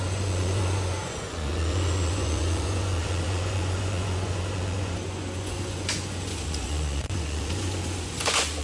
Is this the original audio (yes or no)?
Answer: no